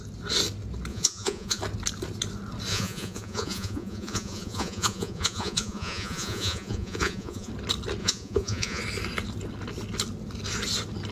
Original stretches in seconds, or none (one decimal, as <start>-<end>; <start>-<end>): 0.0-0.9; 1.6-2.7; 7.5-8.0; 8.8-11.1